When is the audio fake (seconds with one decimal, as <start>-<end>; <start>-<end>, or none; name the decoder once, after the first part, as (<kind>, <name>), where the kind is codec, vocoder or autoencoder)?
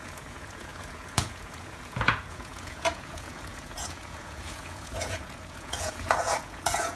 0.0-7.0 (vocoder, Vocos)